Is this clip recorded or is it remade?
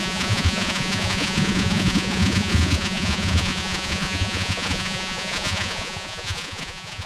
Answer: remade